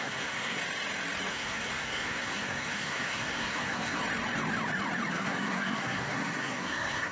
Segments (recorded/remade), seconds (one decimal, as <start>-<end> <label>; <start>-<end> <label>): 0.0-0.6 remade; 0.6-1.3 recorded; 1.3-4.0 remade; 4.0-5.1 recorded; 5.1-7.1 remade